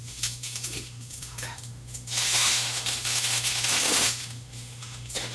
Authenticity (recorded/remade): remade